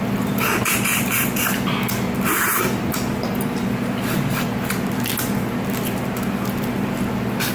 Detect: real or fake real